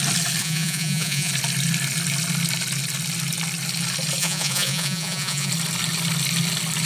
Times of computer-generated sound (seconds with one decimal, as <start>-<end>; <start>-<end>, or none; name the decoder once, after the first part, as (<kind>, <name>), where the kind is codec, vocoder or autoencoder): 0.4-1.3 (vocoder, Vocos); 4.2-5.5